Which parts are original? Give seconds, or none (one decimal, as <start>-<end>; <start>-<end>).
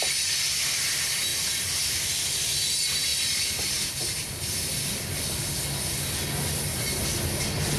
0.0-7.8